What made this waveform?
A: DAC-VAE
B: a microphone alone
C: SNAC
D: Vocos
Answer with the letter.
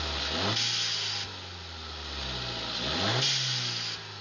B